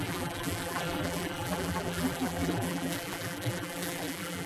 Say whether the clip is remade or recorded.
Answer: remade